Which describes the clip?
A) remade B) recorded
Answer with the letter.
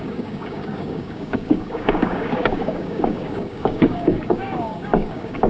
A